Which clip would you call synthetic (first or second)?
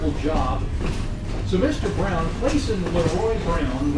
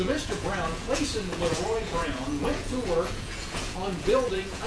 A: second